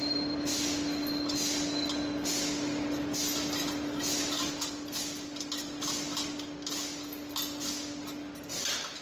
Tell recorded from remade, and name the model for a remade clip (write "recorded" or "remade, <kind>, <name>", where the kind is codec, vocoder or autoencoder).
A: recorded